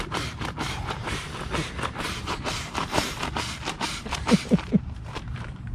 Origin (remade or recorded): remade